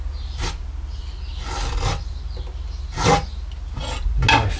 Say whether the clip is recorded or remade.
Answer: recorded